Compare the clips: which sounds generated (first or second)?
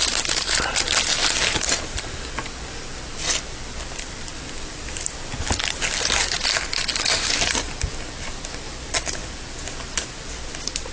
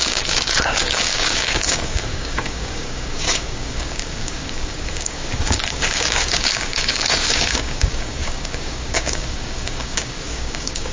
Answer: second